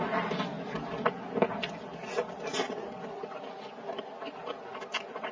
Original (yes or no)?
yes